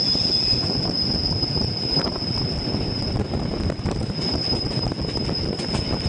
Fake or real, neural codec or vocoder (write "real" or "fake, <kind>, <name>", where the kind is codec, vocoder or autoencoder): real